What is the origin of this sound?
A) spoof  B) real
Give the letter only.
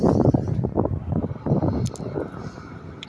B